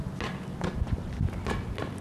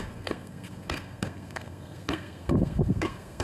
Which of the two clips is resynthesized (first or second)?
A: second